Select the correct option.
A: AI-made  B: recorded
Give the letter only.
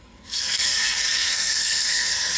A